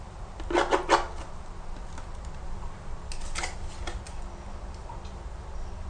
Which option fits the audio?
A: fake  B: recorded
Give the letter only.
B